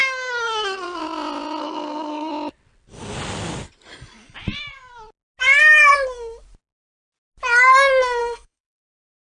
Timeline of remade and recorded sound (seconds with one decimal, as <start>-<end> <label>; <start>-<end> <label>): 0.0-1.0 remade; 1.0-1.6 recorded; 1.6-2.3 remade; 2.3-8.2 recorded; 8.2-8.8 remade; 8.8-9.3 recorded